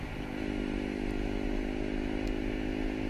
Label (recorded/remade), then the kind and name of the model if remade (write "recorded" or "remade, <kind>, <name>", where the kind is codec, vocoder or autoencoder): recorded